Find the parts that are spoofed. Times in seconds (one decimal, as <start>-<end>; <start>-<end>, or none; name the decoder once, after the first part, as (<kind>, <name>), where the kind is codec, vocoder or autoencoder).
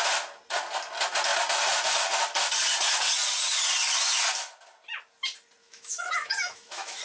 5.6-7.0 (autoencoder, DAC-VAE)